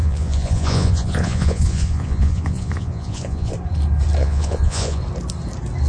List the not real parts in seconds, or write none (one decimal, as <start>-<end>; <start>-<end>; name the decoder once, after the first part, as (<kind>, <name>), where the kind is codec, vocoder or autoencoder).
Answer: 0.0-3.5 (vocoder, Vocos); 4.2-5.0